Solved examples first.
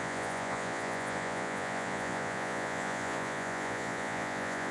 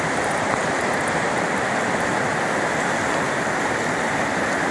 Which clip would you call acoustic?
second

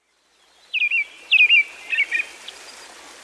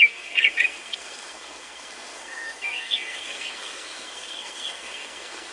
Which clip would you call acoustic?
first